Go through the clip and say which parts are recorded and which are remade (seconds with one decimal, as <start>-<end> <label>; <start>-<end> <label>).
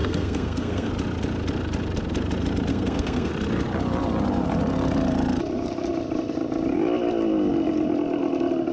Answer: 0.0-0.9 remade; 0.9-2.7 recorded; 2.7-3.3 remade; 3.3-8.7 recorded